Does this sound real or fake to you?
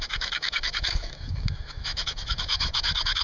fake